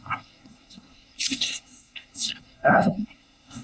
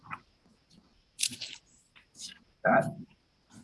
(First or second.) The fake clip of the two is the first